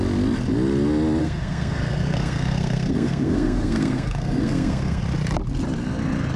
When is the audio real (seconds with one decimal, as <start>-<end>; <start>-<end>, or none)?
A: 0.0-1.2; 5.0-6.4

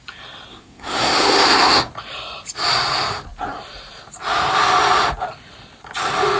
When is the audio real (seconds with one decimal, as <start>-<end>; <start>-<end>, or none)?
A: 0.0-0.5; 1.9-6.4